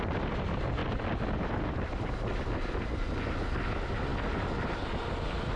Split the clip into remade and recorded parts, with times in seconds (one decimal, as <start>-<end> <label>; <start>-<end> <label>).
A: 0.0-5.6 recorded

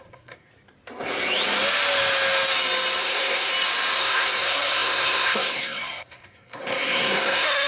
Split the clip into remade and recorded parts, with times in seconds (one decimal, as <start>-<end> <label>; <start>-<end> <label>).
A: 0.0-0.5 remade; 0.5-3.0 recorded; 3.0-3.5 remade; 3.5-4.0 recorded; 4.0-7.7 remade

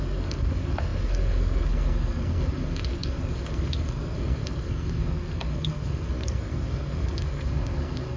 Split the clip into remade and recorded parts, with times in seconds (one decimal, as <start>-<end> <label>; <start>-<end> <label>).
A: 0.0-8.2 remade

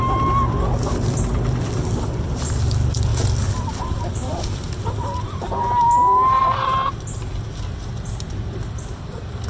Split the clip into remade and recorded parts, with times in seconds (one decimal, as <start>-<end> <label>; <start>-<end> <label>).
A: 0.0-9.5 recorded

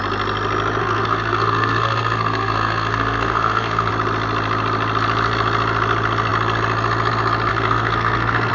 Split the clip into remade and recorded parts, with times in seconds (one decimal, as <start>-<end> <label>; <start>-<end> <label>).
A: 0.0-0.8 recorded; 0.8-3.9 remade; 3.9-7.5 recorded; 7.5-8.5 remade

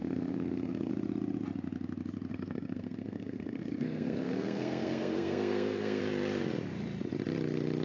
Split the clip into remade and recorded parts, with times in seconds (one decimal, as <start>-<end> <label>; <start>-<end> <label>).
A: 0.0-0.9 remade; 0.9-2.3 recorded; 2.3-6.0 remade; 6.0-7.8 recorded

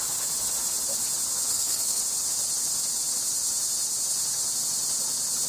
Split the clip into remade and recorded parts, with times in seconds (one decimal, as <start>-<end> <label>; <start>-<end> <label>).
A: 0.0-1.5 recorded; 1.5-2.0 remade; 2.0-5.5 recorded